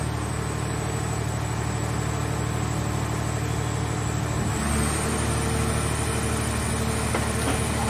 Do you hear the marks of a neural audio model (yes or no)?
no